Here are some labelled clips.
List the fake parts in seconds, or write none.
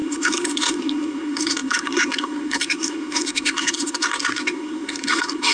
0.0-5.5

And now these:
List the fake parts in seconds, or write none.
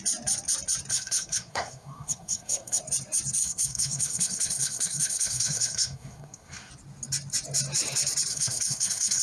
0.9-2.8; 3.4-6.7; 8.3-9.2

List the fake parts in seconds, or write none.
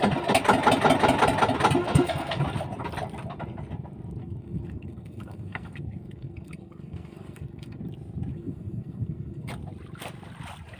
1.8-2.4; 4.2-7.8; 8.3-9.5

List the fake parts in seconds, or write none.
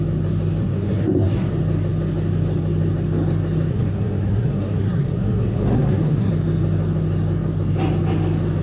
0.6-1.5; 3.7-6.3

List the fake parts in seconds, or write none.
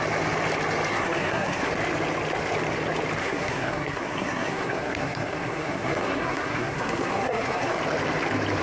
0.9-1.7; 3.2-7.8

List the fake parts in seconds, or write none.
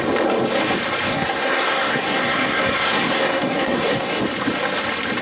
1.1-4.2